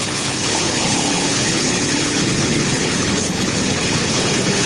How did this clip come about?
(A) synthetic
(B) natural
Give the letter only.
A